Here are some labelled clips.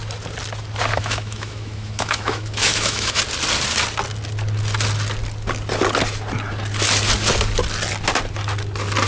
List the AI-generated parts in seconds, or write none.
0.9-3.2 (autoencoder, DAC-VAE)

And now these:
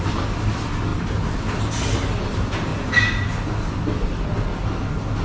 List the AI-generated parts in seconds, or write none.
none

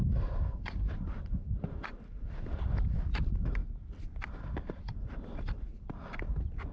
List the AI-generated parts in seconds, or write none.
0.0-3.6 (vocoder, BigVGAN v2); 4.6-6.7